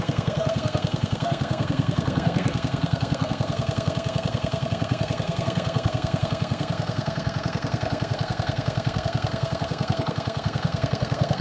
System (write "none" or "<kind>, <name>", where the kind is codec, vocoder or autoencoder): codec, SNAC